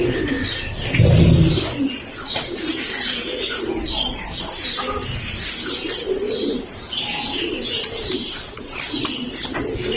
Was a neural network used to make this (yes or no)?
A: no